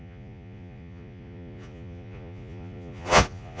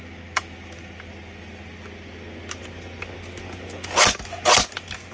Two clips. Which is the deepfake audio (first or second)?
first